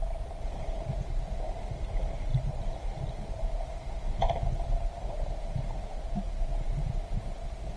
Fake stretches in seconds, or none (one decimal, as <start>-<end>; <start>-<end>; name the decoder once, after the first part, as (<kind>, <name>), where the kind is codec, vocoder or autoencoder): none